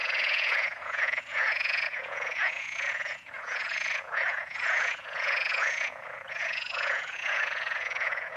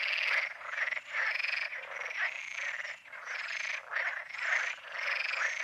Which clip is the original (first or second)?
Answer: second